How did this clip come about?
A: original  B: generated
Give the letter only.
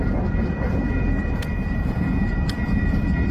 B